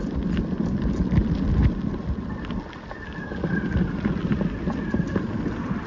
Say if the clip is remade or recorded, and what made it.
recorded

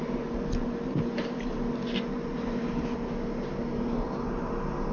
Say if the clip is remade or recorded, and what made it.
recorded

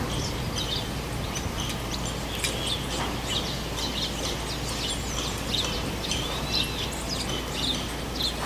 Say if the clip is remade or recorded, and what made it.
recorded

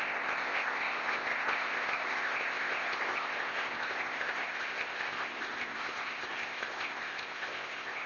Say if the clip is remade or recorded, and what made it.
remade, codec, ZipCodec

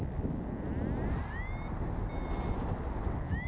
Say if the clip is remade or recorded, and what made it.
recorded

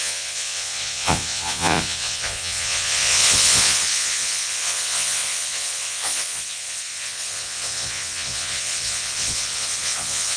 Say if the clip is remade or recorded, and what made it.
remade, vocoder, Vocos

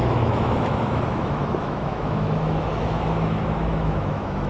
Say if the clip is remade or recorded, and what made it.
remade, autoencoder, DAC-VAE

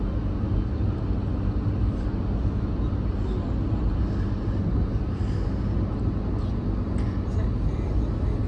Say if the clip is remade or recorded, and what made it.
recorded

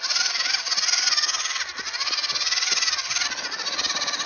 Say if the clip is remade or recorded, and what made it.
recorded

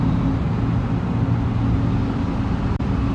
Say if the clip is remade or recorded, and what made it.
recorded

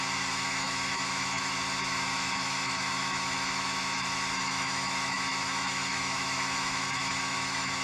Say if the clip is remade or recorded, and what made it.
remade, autoencoder, DAC-VAE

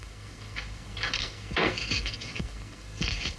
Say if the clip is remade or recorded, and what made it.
remade, codec, SNAC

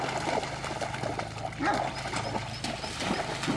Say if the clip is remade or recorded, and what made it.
recorded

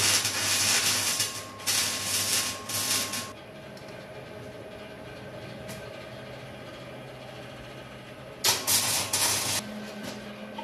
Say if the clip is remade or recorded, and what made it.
recorded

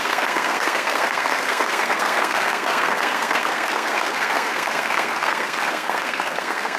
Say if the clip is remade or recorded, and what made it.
remade, codec, SNAC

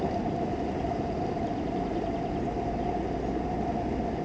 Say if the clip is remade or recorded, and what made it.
recorded